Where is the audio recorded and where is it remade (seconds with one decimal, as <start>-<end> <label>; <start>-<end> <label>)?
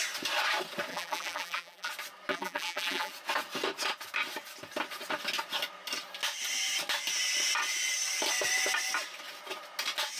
0.0-0.9 recorded; 0.9-1.9 remade; 1.9-2.3 recorded; 2.3-3.1 remade; 3.1-10.2 recorded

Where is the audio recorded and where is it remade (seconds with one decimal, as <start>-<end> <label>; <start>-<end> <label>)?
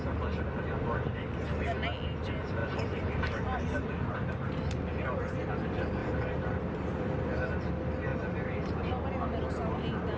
0.0-2.6 recorded; 2.6-3.6 remade; 3.6-6.0 recorded; 6.0-7.5 remade; 7.5-10.2 recorded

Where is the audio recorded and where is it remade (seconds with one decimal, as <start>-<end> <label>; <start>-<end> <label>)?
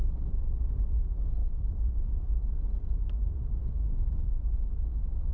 0.0-0.7 remade; 0.7-1.4 recorded; 1.4-4.6 remade; 4.6-5.3 recorded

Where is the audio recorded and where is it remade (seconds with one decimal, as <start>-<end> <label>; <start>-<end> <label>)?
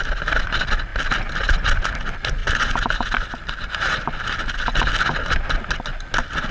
0.0-2.4 recorded; 2.4-4.4 remade; 4.4-6.5 recorded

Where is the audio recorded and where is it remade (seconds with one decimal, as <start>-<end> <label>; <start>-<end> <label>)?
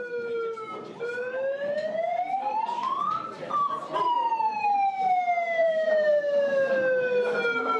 0.0-2.1 recorded; 2.1-4.4 remade; 4.4-5.6 recorded; 5.6-6.1 remade; 6.1-7.8 recorded